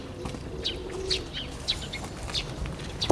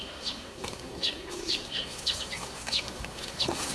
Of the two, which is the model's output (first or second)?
second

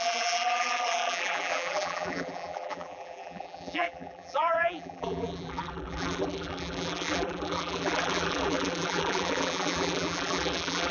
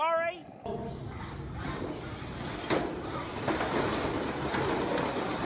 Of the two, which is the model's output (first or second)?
first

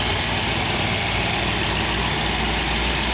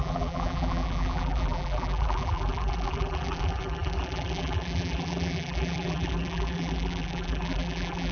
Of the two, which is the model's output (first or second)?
second